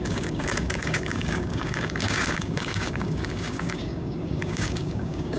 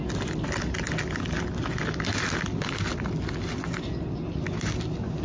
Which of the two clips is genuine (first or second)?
second